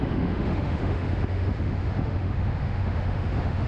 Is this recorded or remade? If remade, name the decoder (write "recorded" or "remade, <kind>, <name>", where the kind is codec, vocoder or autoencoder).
remade, autoencoder, DAC-VAE